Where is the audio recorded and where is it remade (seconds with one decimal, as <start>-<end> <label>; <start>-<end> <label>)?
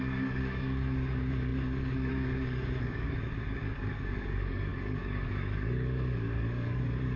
0.0-7.2 remade